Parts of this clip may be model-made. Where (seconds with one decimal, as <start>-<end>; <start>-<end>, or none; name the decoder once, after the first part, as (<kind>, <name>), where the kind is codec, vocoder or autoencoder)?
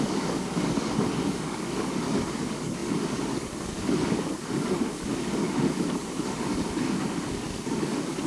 0.0-8.3 (codec, DAC)